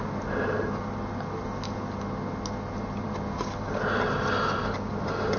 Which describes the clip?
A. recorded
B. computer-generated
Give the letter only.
A